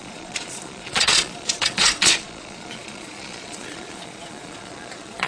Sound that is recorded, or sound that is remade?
remade